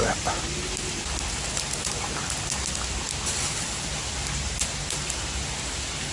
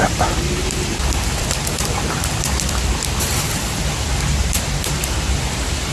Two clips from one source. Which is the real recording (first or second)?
first